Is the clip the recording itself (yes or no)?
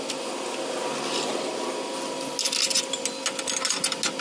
yes